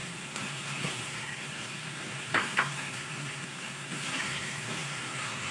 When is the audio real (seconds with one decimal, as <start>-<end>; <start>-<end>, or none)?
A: none